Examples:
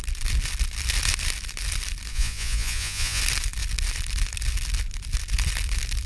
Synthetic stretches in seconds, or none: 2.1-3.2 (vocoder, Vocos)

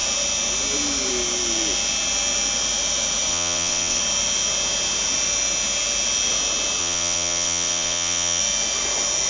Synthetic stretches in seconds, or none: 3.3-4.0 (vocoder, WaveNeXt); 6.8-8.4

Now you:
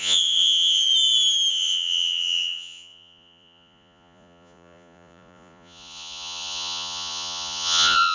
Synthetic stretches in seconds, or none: 0.0-0.8 (vocoder, Vocos); 1.5-8.1

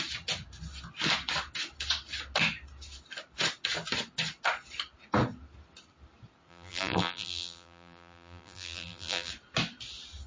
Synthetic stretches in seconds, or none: 6.5-9.3 (vocoder, BigVGAN v2)